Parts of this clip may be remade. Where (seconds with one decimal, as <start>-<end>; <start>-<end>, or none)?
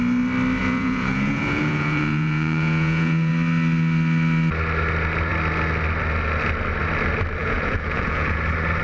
0.6-3.3; 7.4-8.4